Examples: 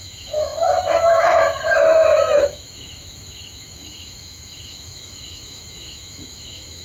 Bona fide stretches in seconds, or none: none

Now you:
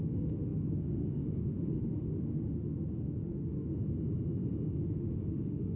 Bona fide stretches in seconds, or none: 3.7-4.7

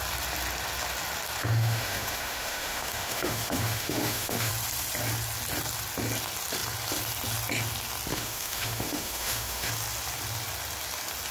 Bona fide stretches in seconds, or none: 0.0-1.4; 4.5-8.1; 9.7-11.3